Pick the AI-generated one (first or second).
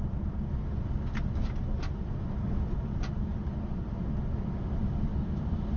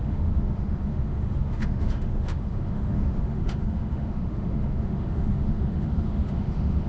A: second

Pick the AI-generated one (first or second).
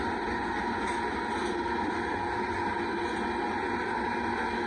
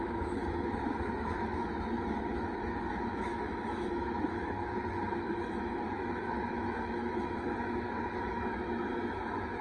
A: second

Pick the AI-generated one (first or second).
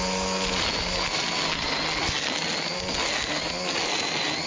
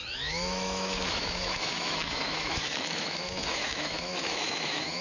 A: second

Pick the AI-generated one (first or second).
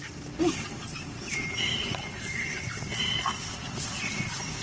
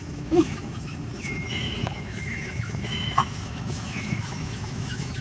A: second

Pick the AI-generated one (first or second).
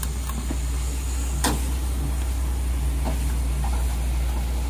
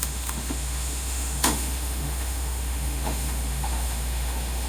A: second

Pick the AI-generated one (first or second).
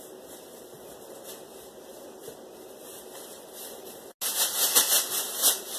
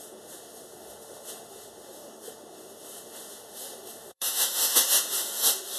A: second